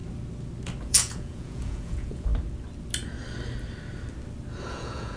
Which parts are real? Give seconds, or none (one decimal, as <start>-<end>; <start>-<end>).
0.0-0.8; 2.3-4.7